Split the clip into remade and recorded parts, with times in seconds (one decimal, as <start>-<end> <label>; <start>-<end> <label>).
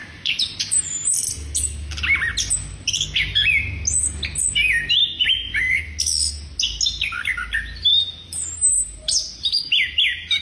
0.0-1.1 remade; 1.1-5.0 recorded; 5.0-6.0 remade; 6.0-7.9 recorded; 7.9-9.6 remade; 9.6-10.4 recorded